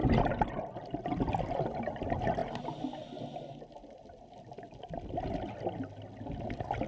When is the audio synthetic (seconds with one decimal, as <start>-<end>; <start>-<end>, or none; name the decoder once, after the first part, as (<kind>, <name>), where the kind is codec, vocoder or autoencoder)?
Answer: none